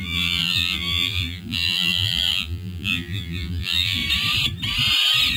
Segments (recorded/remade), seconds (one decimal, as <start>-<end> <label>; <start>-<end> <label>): 0.0-4.0 remade; 4.0-5.4 recorded